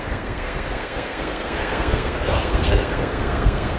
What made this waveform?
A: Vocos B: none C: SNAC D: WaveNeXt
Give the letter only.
C